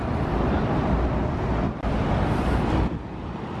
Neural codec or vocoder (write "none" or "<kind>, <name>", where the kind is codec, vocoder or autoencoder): none